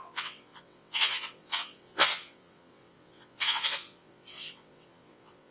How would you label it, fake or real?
fake